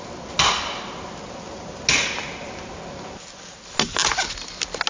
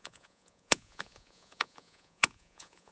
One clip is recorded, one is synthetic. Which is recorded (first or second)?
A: first